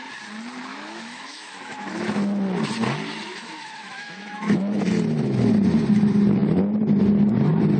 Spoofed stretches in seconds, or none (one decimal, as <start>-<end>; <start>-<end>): 0.7-2.2; 3.3-4.8